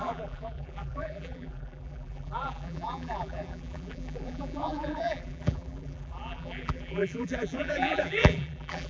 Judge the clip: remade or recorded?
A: remade